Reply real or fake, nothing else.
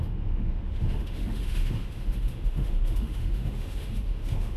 fake